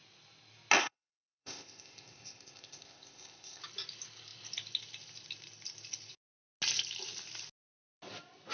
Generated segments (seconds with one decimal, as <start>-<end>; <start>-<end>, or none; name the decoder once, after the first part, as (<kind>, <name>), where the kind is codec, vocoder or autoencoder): 0.8-3.6 (codec, ZipCodec)